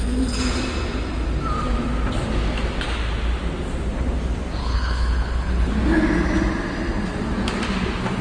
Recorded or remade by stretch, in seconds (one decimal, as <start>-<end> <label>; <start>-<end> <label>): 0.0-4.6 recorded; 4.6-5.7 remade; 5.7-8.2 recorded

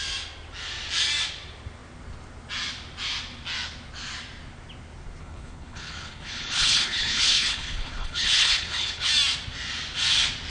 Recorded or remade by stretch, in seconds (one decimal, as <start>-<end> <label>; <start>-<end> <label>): 0.0-5.2 recorded; 5.2-9.1 remade; 9.1-10.5 recorded

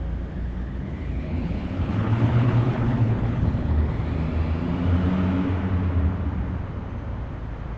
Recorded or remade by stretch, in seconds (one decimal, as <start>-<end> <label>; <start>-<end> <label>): 0.0-0.4 recorded; 0.4-3.9 remade; 3.9-7.8 recorded

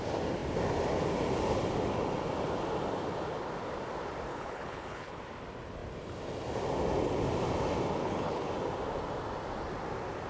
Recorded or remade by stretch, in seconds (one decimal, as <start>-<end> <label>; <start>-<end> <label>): 0.0-4.3 recorded; 4.3-5.2 remade; 5.2-8.0 recorded; 8.0-8.5 remade; 8.5-10.3 recorded

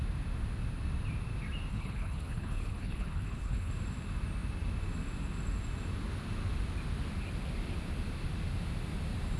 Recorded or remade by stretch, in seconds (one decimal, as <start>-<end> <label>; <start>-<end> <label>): 0.0-1.7 recorded; 1.7-3.7 remade; 3.7-9.4 recorded

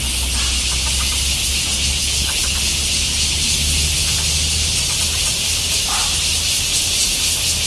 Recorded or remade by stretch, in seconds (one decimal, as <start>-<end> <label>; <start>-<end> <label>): 0.0-2.0 recorded; 2.0-2.6 remade; 2.6-7.7 recorded

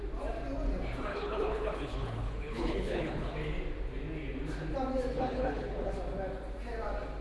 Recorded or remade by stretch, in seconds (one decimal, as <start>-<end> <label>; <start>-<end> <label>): 0.0-1.1 recorded; 1.1-3.3 remade; 3.3-5.1 recorded; 5.1-5.9 remade; 5.9-7.2 recorded